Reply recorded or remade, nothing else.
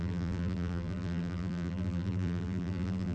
remade